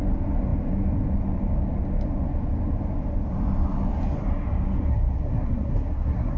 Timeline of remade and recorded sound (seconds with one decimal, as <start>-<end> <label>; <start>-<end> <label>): 0.0-4.9 recorded; 4.9-6.4 remade